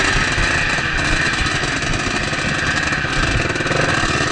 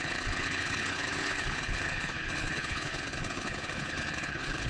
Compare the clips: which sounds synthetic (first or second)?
second